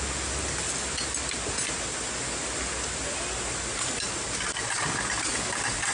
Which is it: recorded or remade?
recorded